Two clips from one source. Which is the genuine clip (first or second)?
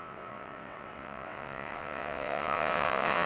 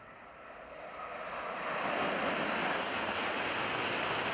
second